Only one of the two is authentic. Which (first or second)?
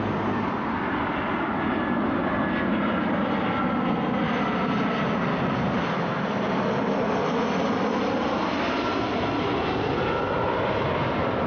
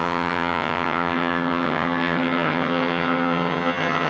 first